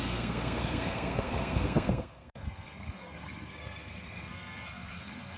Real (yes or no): no